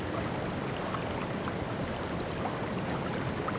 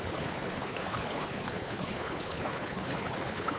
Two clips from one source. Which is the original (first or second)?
first